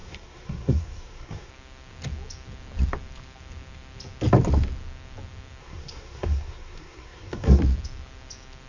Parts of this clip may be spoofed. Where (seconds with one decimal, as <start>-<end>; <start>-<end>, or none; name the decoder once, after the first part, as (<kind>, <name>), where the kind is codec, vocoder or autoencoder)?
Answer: 0.0-1.5 (codec, SNAC); 5.6-7.6